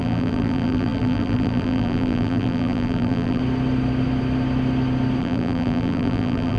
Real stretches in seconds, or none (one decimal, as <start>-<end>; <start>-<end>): 3.4-5.2